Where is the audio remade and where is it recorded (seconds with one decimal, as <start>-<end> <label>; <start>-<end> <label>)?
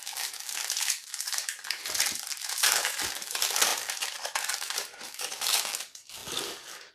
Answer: 0.0-1.8 remade; 1.8-2.5 recorded; 2.5-6.9 remade